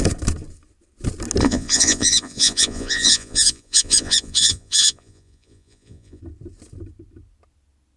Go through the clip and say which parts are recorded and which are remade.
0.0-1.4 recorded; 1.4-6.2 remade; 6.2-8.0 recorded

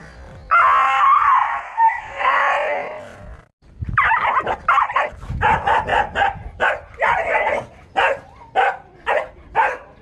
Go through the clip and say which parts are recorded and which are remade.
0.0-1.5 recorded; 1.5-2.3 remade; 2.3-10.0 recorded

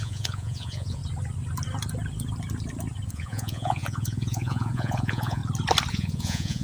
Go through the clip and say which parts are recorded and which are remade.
0.0-1.0 remade; 1.0-3.1 recorded; 3.1-5.4 remade; 5.4-5.9 recorded; 5.9-6.6 remade

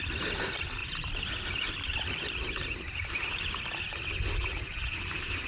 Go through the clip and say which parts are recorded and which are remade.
0.0-5.5 recorded